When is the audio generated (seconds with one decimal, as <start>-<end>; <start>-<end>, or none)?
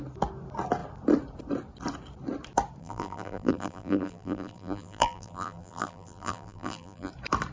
2.8-7.1